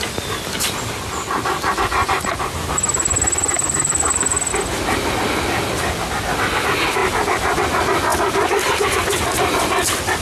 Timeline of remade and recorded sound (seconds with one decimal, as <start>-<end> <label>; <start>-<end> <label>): 0.0-2.0 recorded; 2.0-4.5 remade; 4.5-7.0 recorded; 7.0-7.6 remade; 7.6-10.2 recorded